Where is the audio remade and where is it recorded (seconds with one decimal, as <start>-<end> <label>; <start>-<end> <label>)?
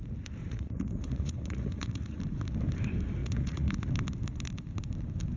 0.0-0.4 recorded; 0.4-2.2 remade; 2.2-3.2 recorded; 3.2-3.9 remade; 3.9-5.4 recorded